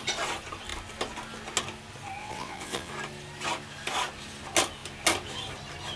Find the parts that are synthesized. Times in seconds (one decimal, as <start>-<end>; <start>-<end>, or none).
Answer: 2.2-2.9